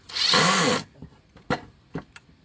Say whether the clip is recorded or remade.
recorded